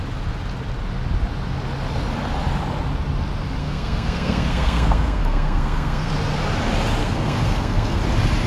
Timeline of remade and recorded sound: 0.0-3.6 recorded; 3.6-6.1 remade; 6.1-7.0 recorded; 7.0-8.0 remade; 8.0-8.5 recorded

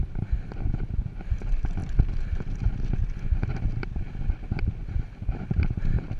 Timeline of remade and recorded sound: 0.0-6.2 recorded

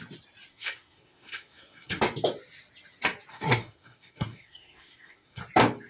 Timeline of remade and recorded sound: 0.0-0.5 recorded; 0.5-2.0 remade; 2.0-3.3 recorded; 3.3-5.4 remade; 5.4-5.9 recorded